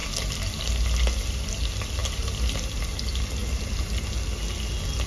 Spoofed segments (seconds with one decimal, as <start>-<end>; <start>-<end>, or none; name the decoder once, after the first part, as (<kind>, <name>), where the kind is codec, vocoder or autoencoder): none

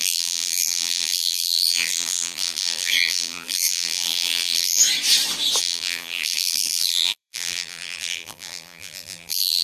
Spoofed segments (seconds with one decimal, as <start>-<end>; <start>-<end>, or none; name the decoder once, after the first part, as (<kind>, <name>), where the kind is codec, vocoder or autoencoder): 0.0-4.8 (vocoder, BigVGAN v2); 5.6-9.6